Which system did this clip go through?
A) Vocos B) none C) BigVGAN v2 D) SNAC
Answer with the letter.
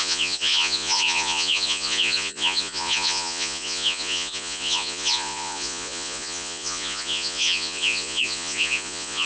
A